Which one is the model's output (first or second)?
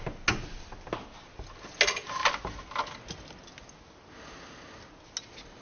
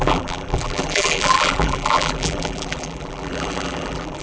second